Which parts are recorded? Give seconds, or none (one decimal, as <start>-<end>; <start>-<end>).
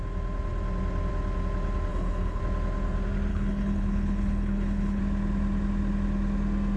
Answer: 0.0-1.9; 2.4-3.3; 5.0-6.8